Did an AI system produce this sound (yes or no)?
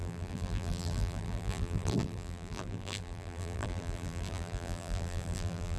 yes